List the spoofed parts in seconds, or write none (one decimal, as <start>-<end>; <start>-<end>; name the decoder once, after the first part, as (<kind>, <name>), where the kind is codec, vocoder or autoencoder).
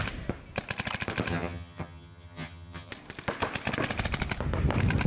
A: 1.3-2.9 (vocoder, HiFi-GAN)